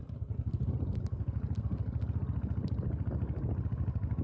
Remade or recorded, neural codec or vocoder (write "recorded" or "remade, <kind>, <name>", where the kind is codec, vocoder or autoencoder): recorded